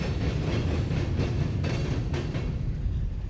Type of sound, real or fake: real